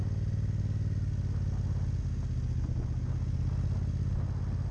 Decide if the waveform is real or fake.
real